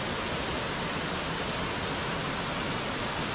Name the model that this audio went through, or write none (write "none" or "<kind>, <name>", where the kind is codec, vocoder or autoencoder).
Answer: none